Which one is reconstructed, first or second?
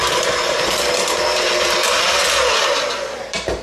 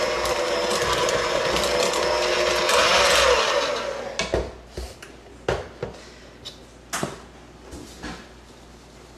first